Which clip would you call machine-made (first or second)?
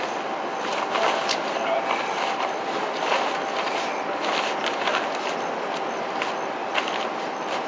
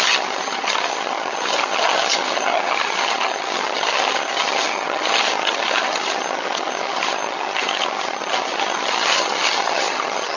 second